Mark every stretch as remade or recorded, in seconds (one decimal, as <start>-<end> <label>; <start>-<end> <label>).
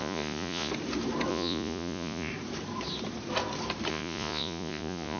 0.0-0.7 remade; 0.7-1.3 recorded; 1.3-2.3 remade; 2.3-3.9 recorded; 3.9-5.2 remade